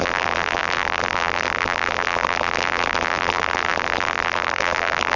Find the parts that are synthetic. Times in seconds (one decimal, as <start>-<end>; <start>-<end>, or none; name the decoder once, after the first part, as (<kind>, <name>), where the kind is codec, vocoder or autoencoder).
0.0-5.2 (vocoder, BigVGAN v2)